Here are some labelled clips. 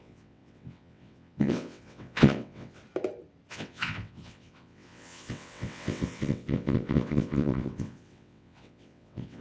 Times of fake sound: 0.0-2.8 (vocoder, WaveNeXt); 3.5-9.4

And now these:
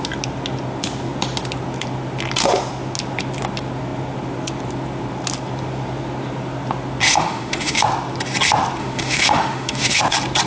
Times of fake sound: 7.1-7.8 (autoencoder, DAC-VAE); 8.8-10.0